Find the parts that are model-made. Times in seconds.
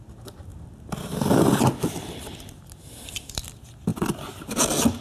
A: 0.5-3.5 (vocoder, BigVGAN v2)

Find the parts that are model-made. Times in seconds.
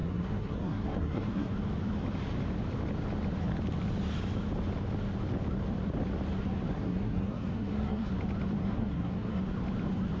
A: 0.0-1.5 (codec, SNAC); 6.7-8.1; 8.6-9.4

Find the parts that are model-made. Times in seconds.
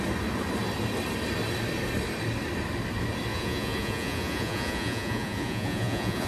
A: 3.3-6.3 (vocoder, Vocos)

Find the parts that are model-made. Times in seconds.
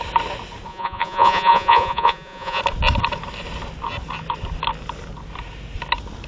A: 0.7-2.6 (vocoder, Vocos)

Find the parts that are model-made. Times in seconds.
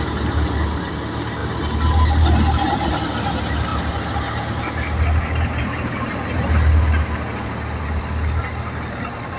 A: none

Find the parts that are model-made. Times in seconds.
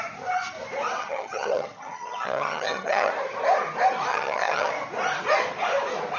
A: 1.0-3.1 (vocoder, HiFi-GAN); 4.1-4.7